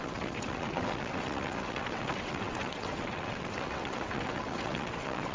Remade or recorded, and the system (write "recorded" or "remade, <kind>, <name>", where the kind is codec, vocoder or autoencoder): remade, vocoder, WaveNeXt